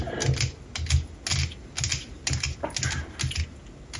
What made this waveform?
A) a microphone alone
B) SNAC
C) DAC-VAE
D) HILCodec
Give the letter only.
A